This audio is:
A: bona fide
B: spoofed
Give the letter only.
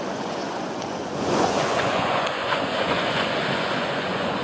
B